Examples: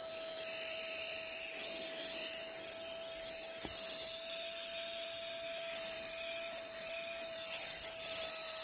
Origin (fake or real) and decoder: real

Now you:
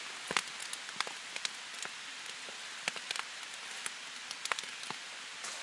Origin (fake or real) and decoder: real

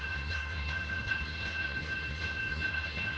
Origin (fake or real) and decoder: fake, codec, SNAC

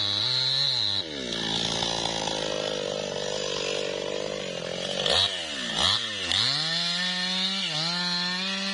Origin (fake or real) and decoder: real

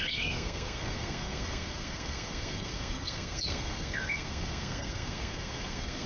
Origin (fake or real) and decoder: fake, codec, SNAC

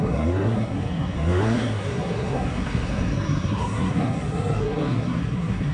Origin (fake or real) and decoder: fake, codec, SNAC